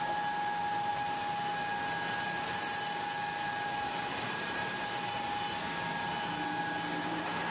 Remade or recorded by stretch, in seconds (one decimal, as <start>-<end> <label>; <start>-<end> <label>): 0.0-7.5 recorded